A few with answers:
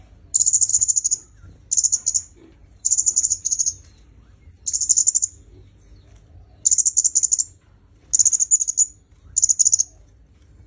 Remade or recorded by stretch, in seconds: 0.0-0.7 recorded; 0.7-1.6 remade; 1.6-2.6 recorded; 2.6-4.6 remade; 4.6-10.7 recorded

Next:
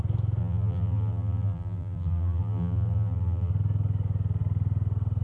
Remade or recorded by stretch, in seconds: 0.0-0.4 recorded; 0.4-3.5 remade; 3.5-5.2 recorded

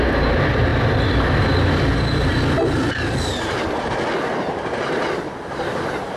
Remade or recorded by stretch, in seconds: 0.0-6.2 recorded

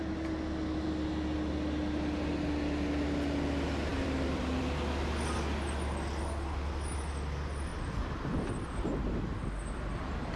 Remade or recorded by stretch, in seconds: 0.0-3.9 recorded; 3.9-4.6 remade; 4.6-7.7 recorded; 7.7-10.0 remade; 10.0-10.4 recorded

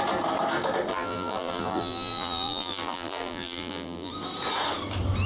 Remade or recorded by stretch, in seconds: 0.0-0.9 recorded; 0.9-4.1 remade; 4.1-5.3 recorded

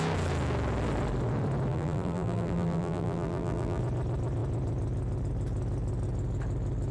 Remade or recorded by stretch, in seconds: 0.0-1.7 recorded; 1.7-3.8 remade; 3.8-6.9 recorded

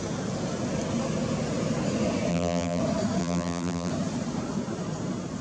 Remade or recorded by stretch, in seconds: 0.0-2.3 recorded; 2.3-2.8 remade; 2.8-3.2 recorded; 3.2-3.9 remade; 3.9-5.4 recorded

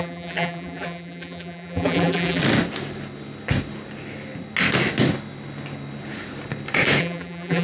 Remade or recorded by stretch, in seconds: 0.0-2.4 remade; 2.4-7.0 recorded; 7.0-7.6 remade